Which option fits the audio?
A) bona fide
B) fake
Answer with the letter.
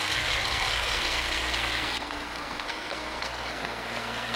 B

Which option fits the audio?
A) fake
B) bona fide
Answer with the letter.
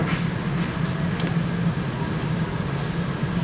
B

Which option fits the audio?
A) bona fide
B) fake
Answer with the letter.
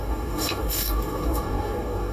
B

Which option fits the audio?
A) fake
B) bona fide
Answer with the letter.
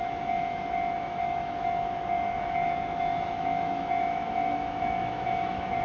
A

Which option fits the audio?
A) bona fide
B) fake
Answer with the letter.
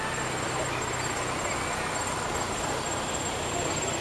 A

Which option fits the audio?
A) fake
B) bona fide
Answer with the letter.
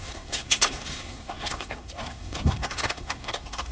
A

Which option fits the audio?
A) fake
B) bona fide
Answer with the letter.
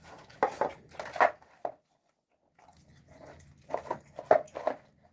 B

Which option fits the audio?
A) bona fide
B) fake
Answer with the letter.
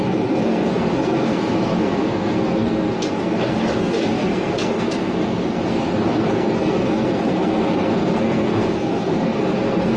B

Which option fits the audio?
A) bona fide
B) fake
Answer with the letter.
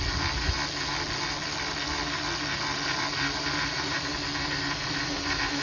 A